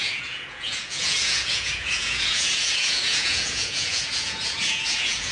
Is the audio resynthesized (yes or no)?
yes